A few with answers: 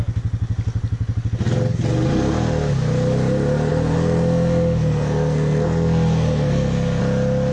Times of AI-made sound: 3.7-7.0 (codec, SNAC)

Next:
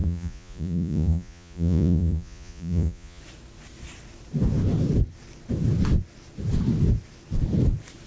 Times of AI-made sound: 0.0-3.2 (vocoder, Vocos)

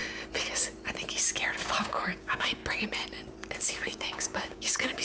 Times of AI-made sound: 1.8-2.6 (codec, DAC); 3.6-5.0

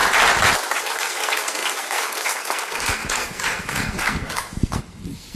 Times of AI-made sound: 0.8-5.4 (codec, SNAC)

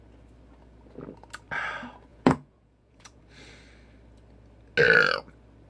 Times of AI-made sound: 2.1-3.2 (vocoder, Vocos)

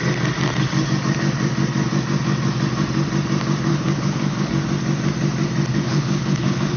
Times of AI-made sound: 3.7-4.5 (codec, HILCodec); 5.7-6.8

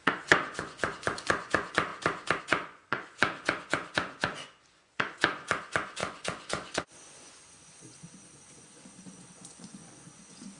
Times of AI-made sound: 0.0-1.9 (vocoder, Vocos); 2.4-10.6